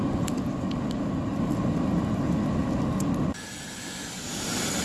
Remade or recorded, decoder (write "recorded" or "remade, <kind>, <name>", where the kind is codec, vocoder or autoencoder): recorded